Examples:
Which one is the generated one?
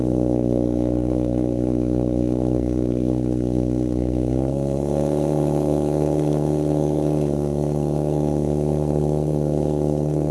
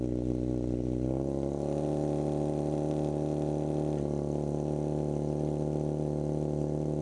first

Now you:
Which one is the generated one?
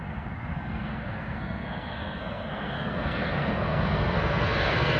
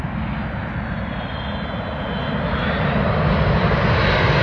first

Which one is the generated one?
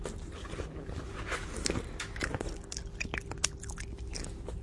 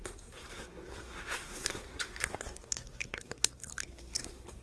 second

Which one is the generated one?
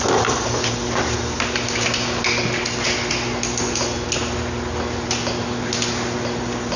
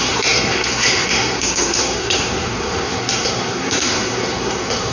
second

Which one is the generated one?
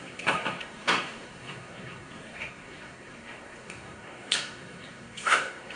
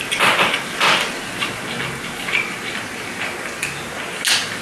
first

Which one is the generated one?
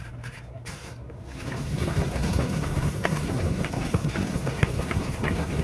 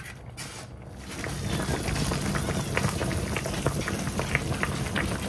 first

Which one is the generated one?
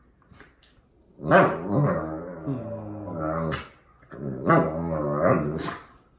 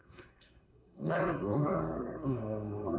second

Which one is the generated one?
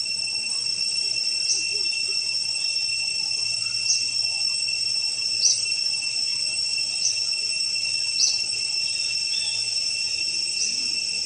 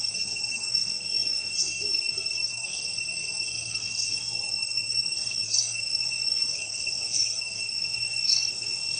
second